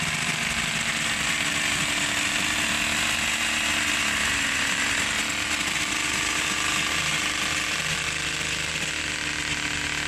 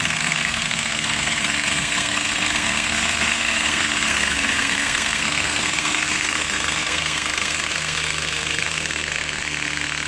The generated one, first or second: second